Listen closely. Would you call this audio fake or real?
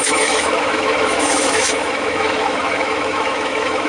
fake